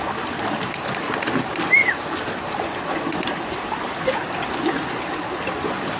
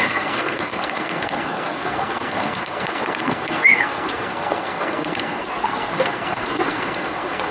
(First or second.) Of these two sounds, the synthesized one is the second